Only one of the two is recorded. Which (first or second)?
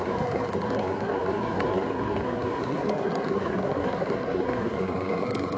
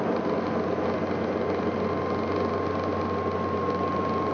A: second